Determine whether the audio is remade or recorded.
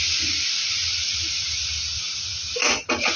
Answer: recorded